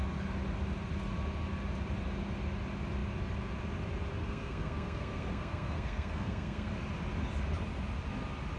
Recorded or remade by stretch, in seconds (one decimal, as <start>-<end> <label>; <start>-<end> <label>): 0.0-4.2 recorded; 4.2-6.7 remade; 6.7-8.6 recorded